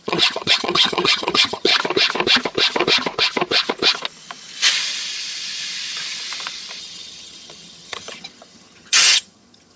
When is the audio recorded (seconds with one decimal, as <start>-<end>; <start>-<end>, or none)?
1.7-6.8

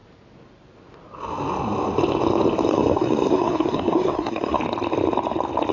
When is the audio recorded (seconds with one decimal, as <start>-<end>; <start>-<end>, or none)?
0.0-2.7; 4.6-5.7

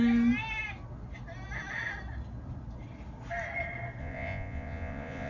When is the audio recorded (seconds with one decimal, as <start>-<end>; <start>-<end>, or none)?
0.0-4.0

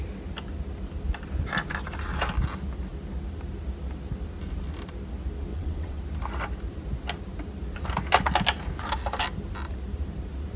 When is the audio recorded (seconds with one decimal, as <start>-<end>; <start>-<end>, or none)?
0.0-5.5; 6.0-10.6

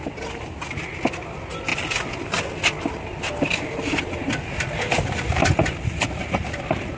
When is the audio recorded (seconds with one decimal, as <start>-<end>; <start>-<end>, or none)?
0.0-7.0

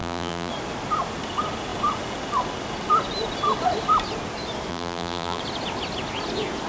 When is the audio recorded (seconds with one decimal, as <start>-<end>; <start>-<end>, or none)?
0.5-4.7; 5.4-6.7

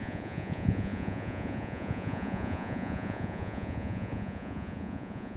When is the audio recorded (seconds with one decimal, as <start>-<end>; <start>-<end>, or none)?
none